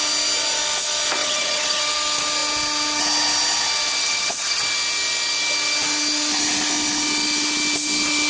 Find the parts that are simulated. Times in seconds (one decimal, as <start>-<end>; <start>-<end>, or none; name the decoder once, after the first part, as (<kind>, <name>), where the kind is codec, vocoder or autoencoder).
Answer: 1.2-1.8 (vocoder, HiFi-GAN); 4.0-4.6